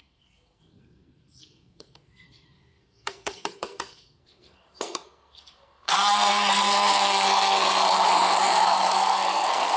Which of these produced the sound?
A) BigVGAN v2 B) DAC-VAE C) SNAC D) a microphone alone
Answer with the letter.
C